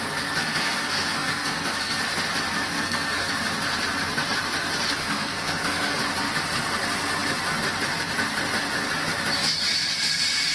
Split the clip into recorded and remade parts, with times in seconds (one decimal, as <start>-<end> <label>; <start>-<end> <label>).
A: 0.0-0.4 recorded; 0.4-2.0 remade; 2.0-2.7 recorded; 2.7-3.3 remade; 3.3-5.0 recorded; 5.0-6.0 remade; 6.0-10.5 recorded